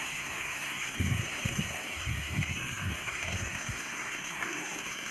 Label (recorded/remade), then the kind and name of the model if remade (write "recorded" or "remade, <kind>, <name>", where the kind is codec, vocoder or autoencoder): remade, codec, SNAC